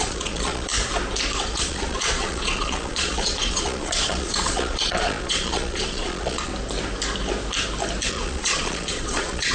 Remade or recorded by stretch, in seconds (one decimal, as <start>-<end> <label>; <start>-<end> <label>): 0.0-0.7 remade; 0.7-1.4 recorded; 1.4-6.5 remade; 6.5-8.1 recorded; 8.1-9.5 remade